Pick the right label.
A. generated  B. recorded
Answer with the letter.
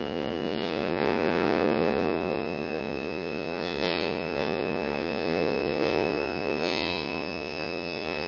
A